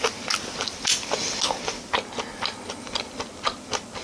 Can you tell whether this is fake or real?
real